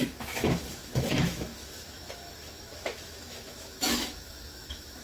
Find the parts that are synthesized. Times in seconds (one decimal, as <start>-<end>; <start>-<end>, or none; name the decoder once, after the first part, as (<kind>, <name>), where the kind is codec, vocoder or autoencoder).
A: 0.0-5.0 (autoencoder, DAC-VAE)